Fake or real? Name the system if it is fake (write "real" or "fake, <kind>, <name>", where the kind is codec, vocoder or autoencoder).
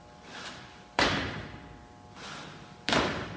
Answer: fake, vocoder, BigVGAN v2